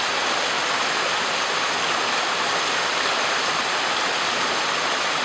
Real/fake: real